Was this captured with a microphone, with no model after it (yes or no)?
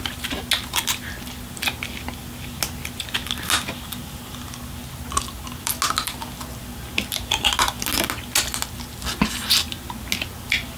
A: yes